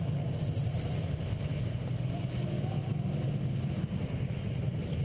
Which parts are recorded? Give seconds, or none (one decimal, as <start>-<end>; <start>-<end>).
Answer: 1.5-4.5

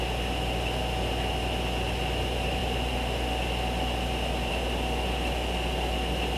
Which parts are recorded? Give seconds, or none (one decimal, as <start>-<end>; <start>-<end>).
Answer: 0.0-6.4

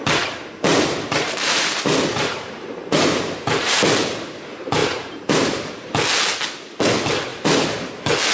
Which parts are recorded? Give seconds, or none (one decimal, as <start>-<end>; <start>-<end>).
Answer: 0.0-0.7; 3.8-4.8; 5.9-7.3; 7.9-8.3

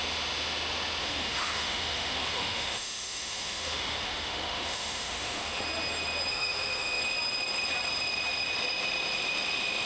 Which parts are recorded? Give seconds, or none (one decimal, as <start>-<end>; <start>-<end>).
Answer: 0.0-1.0; 5.6-6.3; 7.0-9.9

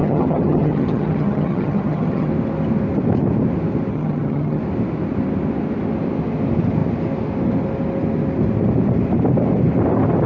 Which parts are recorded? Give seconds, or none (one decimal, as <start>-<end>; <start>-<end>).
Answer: 2.3-3.9; 4.6-10.3

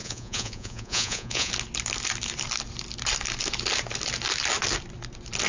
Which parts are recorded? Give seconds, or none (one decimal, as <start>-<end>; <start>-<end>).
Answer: 1.5-5.5

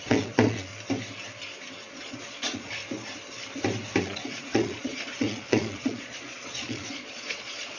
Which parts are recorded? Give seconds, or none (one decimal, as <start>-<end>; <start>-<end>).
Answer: 0.7-1.9; 2.8-4.0

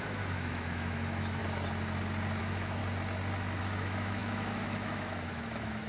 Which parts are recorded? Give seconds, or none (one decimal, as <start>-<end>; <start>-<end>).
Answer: 1.4-2.4; 2.8-3.6